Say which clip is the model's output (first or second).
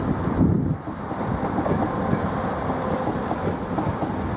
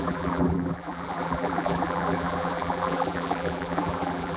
second